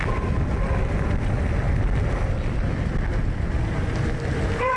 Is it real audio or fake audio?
real